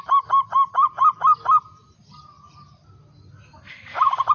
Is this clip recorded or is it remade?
recorded